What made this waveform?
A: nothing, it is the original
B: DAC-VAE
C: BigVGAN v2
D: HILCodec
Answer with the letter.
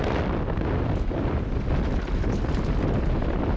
A